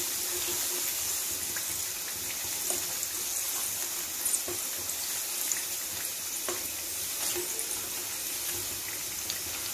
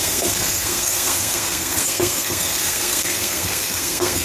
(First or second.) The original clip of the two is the first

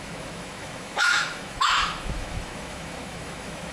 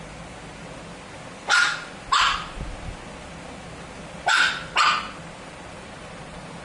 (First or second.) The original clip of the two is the second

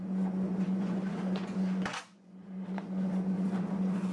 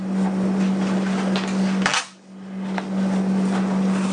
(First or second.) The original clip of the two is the second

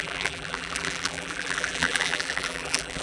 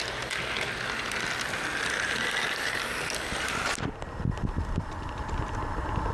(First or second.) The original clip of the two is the second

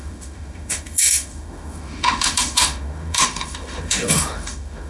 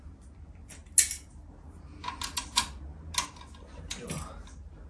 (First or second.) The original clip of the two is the second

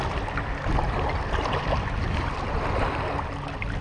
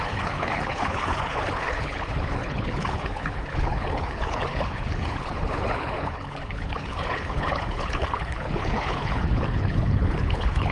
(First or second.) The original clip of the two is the first